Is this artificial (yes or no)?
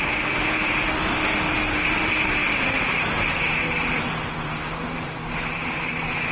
no